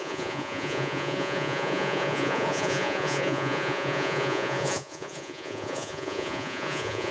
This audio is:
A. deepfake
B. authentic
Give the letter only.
A